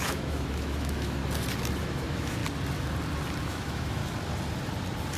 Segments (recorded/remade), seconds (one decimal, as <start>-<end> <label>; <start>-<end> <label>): 0.0-1.2 remade; 1.2-1.8 recorded; 1.8-2.4 remade; 2.4-3.4 recorded; 3.4-4.0 remade; 4.0-5.2 recorded